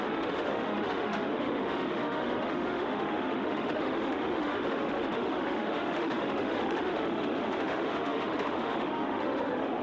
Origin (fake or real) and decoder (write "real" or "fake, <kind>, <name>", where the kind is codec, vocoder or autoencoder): fake, autoencoder, DAC-VAE